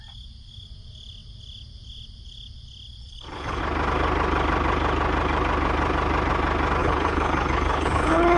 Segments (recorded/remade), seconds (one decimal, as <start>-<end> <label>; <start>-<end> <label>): 0.0-3.0 recorded; 3.0-3.6 remade; 3.6-6.8 recorded; 6.8-8.4 remade